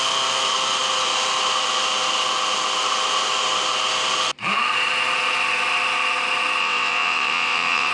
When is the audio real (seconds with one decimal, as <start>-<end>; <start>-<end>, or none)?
0.0-6.6